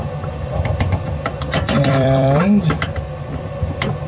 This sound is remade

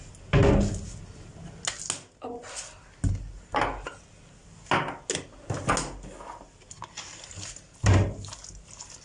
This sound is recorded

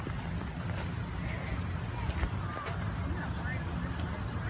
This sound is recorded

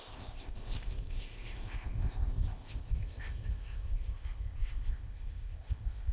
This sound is remade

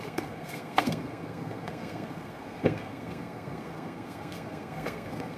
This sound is remade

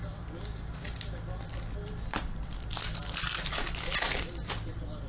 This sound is recorded